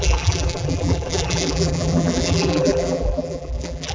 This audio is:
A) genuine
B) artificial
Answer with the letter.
B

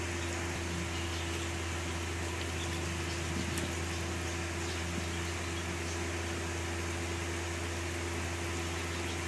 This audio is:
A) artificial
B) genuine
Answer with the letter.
B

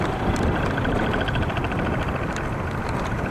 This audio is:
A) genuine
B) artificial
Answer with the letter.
A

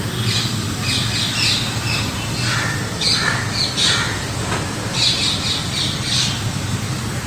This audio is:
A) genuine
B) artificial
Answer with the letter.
A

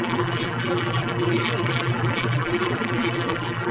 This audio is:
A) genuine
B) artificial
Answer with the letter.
B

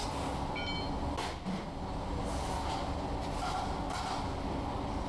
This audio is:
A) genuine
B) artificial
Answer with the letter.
A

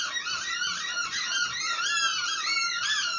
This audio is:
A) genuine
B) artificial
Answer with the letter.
B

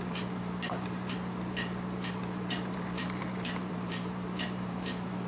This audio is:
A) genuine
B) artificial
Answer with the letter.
B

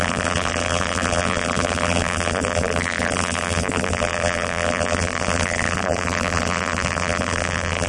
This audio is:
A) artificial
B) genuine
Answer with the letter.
A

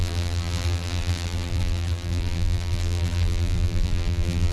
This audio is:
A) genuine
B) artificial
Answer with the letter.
B